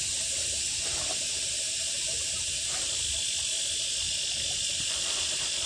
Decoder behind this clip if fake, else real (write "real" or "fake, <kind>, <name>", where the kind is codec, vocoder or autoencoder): real